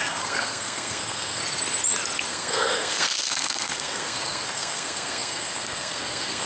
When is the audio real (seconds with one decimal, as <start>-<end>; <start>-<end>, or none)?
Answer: 1.4-2.3